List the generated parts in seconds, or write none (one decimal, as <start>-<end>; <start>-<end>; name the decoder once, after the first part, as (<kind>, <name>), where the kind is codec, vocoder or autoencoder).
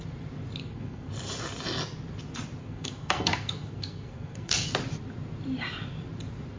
0.6-1.1 (codec, SNAC); 2.6-4.7